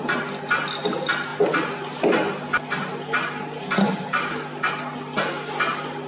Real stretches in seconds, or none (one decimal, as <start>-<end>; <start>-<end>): 0.0-6.1

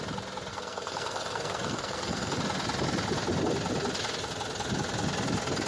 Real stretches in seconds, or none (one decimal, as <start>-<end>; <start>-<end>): 0.0-0.5; 2.4-5.7